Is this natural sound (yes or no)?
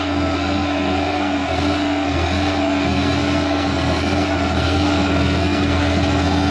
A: no